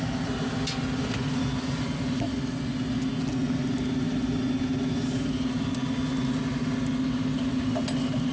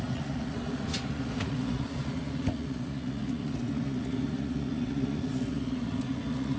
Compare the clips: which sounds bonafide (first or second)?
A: first